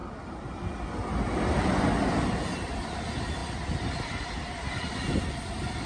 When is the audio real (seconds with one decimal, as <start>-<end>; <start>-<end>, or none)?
0.0-5.9